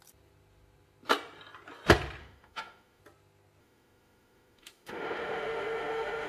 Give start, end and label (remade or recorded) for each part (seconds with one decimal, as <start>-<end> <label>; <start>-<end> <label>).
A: 0.0-2.2 recorded; 2.2-3.0 remade; 3.0-3.6 recorded; 3.6-6.3 remade